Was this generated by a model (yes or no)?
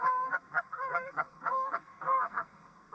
yes